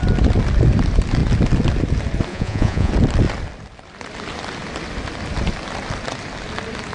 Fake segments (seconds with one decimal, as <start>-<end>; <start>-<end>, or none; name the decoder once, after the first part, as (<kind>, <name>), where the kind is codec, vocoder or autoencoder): 2.3-2.9 (vocoder, Vocos)